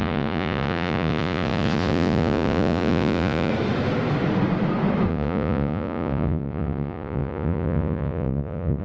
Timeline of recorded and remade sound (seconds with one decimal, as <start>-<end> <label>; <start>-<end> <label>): 0.0-3.5 remade; 3.5-5.1 recorded; 5.1-8.8 remade